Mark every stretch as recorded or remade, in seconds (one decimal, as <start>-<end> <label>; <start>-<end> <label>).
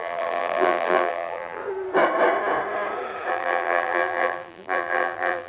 0.0-1.6 remade; 1.6-3.3 recorded; 3.3-5.5 remade